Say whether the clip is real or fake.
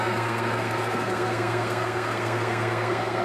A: fake